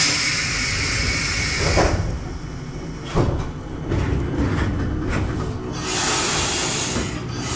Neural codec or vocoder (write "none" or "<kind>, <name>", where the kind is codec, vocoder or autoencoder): none